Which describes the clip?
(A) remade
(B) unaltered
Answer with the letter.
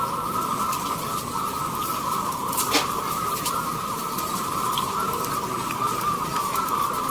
B